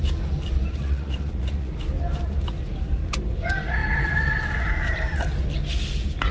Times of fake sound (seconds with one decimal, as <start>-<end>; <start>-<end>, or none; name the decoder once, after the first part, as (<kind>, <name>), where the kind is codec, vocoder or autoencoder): 0.8-1.7 (vocoder, Vocos)